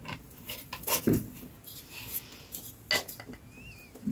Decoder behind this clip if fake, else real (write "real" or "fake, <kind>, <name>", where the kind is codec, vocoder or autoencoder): real